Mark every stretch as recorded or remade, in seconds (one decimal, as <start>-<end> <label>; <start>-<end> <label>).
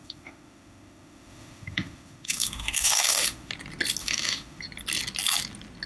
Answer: 0.0-3.5 remade; 3.5-4.0 recorded; 4.0-4.6 remade; 4.6-5.9 recorded